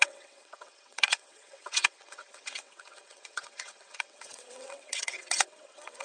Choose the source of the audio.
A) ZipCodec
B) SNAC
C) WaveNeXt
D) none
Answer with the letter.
C